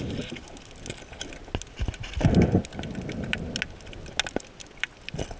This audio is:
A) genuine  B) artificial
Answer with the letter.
A